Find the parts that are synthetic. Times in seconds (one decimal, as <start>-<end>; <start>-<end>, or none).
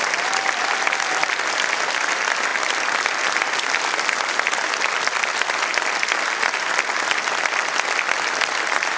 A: none